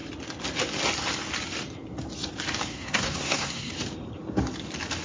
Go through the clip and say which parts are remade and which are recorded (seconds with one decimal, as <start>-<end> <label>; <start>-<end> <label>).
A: 0.0-2.7 recorded; 2.7-3.7 remade; 3.7-5.0 recorded